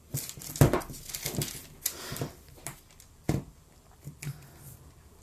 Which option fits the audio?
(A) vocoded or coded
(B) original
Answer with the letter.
B